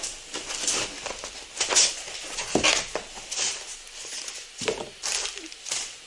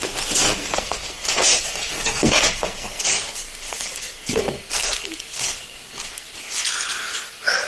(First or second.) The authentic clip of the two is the first